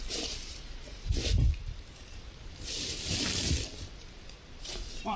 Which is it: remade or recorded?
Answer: remade